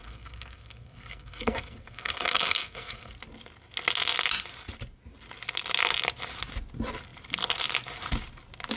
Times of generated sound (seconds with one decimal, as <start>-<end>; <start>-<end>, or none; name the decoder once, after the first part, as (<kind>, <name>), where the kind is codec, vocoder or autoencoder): 0.0-3.1 (codec, SNAC)